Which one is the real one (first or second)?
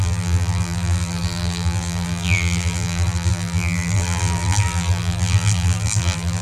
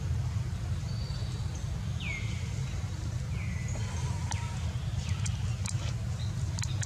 second